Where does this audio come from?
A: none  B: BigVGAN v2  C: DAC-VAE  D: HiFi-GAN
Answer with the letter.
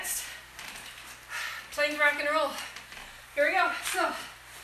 A